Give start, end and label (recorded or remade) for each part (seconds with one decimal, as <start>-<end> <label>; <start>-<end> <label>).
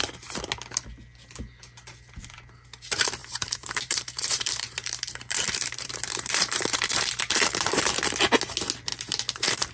0.0-3.2 recorded; 3.2-8.1 remade; 8.1-8.9 recorded; 8.9-9.7 remade